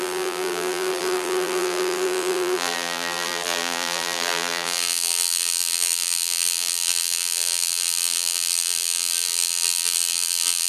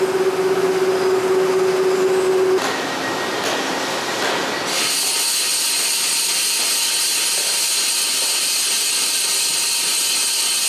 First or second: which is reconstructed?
first